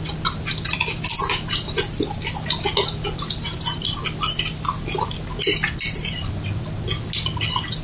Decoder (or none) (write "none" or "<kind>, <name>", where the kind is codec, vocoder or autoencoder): none